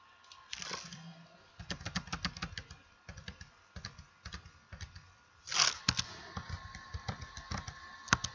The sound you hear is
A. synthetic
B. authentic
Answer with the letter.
B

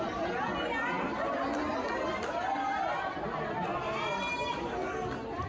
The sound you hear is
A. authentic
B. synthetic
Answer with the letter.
A